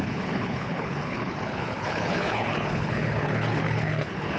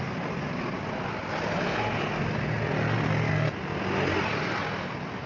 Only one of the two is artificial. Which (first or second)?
first